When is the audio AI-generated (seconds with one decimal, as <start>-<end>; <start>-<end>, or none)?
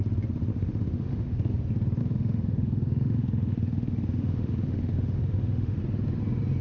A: 0.5-1.5; 2.0-5.8